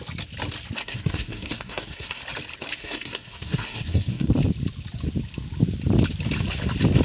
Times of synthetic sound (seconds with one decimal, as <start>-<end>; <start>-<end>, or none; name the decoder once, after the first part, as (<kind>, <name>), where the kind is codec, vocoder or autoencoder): 0.8-2.2 (codec, SNAC); 2.8-4.3